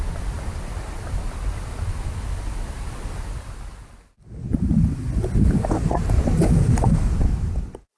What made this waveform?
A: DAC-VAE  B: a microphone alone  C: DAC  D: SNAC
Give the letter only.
B